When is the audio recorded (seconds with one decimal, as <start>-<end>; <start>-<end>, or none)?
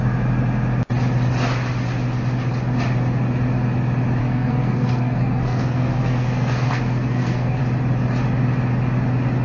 0.0-4.2; 7.6-9.4